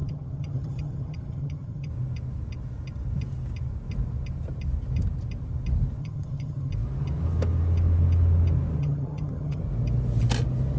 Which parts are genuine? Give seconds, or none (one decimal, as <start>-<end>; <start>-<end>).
1.9-6.0; 6.7-8.8; 9.6-10.8

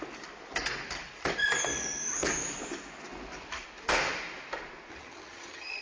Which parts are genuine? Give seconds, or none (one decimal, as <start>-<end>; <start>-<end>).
0.0-4.9

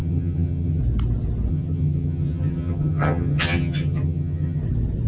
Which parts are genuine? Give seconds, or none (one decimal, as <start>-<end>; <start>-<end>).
0.8-1.5; 4.6-5.1

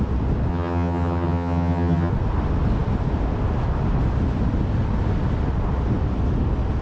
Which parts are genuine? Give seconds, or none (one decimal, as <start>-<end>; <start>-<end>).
0.0-0.5; 2.1-6.8

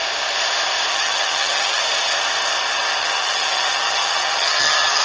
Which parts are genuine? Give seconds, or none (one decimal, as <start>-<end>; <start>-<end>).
0.0-0.9; 1.8-3.0

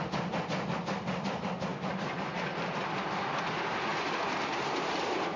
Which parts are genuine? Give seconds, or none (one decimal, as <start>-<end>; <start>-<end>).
0.0-5.4

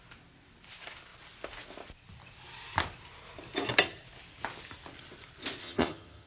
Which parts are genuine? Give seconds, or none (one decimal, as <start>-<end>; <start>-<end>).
0.0-5.6

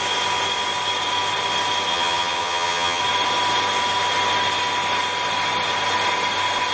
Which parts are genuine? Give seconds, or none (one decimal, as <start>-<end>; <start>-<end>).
0.0-1.9; 3.0-6.7